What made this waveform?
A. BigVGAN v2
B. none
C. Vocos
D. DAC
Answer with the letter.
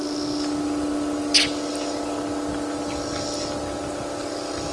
B